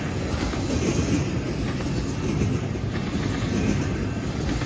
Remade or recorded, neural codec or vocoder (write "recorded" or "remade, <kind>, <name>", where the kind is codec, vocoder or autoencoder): recorded